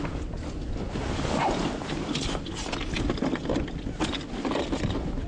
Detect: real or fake real